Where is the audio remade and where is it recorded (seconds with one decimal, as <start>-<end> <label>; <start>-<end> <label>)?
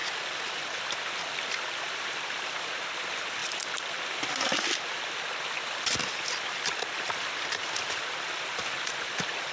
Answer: 0.0-0.6 recorded; 0.6-9.5 remade